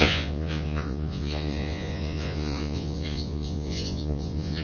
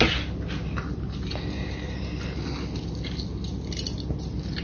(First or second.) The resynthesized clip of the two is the first